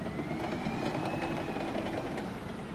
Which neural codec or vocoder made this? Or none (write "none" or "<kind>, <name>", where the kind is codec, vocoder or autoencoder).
none